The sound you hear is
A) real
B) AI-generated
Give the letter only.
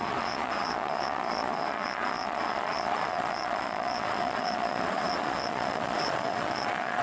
B